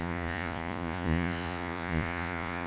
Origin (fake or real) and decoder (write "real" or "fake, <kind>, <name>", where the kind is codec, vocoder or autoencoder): fake, vocoder, Vocos